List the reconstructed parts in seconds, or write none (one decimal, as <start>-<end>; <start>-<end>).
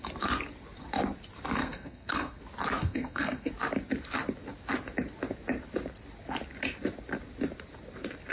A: 1.6-2.4; 2.8-3.5